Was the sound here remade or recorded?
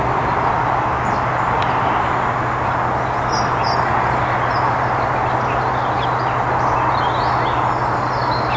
recorded